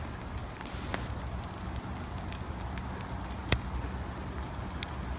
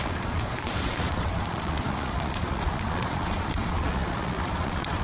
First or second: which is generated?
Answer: second